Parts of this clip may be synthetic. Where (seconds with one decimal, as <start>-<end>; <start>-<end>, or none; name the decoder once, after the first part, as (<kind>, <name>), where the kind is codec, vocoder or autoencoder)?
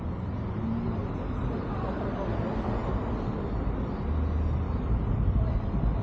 none